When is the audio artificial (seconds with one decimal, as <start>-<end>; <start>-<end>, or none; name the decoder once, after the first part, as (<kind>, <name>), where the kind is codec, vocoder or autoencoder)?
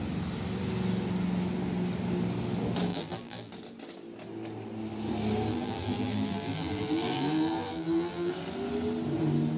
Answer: 2.9-3.5 (vocoder, BigVGAN v2); 5.5-8.3